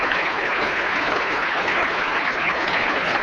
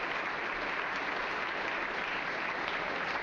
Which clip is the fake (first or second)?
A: first